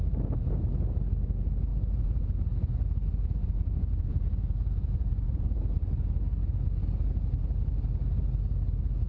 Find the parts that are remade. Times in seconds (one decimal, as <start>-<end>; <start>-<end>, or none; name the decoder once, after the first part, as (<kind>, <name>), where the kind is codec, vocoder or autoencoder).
1.7-2.2 (vocoder, Vocos); 3.4-5.6